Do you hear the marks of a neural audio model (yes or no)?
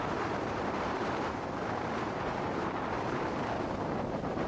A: yes